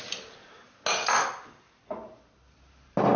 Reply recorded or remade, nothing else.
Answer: recorded